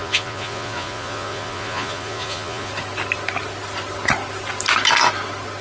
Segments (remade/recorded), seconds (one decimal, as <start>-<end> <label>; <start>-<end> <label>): 0.0-2.7 remade; 2.7-5.6 recorded